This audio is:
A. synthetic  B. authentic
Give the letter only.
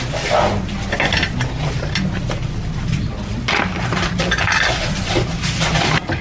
B